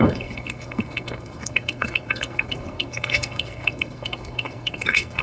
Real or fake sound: fake